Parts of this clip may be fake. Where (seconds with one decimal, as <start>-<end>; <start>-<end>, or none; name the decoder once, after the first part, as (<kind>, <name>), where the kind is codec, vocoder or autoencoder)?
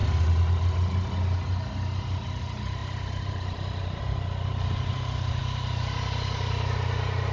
none